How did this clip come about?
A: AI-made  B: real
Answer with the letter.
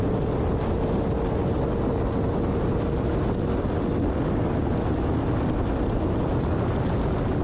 B